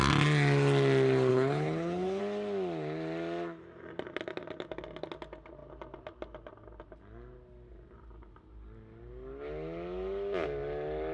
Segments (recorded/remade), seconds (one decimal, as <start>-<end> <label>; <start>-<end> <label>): 0.0-1.3 recorded; 1.3-2.2 remade; 2.2-11.1 recorded